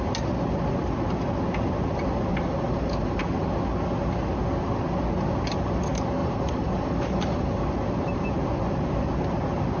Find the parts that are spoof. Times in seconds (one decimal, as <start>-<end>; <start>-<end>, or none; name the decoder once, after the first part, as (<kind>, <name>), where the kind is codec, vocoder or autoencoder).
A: 2.3-3.2 (vocoder, BigVGAN v2); 6.2-7.6